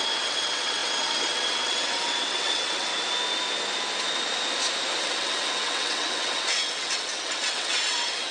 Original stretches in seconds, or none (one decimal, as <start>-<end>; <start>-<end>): 2.9-5.0